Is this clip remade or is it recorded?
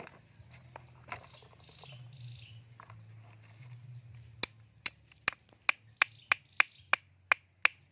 recorded